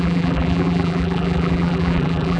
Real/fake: fake